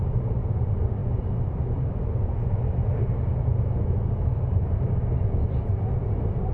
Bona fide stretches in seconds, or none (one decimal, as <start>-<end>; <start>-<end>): 0.0-6.5